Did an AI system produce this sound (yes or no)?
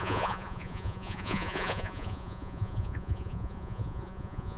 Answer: yes